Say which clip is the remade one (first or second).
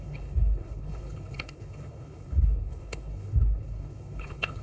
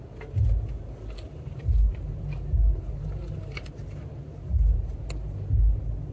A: first